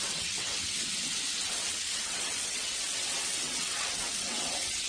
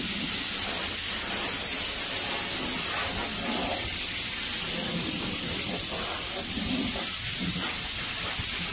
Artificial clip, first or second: first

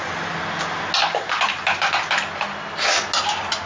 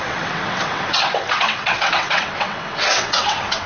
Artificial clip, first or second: second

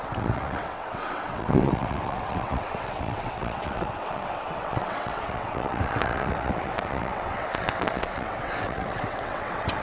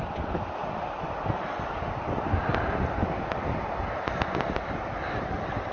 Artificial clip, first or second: first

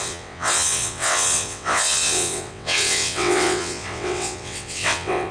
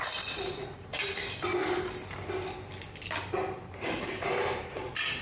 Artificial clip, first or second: first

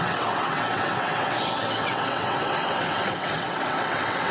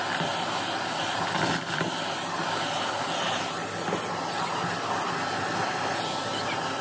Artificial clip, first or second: first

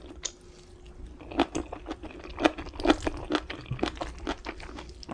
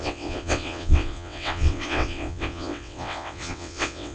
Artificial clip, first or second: second